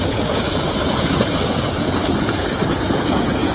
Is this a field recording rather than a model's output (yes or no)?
no